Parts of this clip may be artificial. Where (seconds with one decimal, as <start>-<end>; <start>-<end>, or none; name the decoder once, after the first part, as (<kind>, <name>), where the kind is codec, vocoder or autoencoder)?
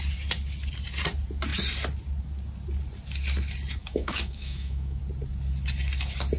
3.8-5.0 (autoencoder, DAC-VAE)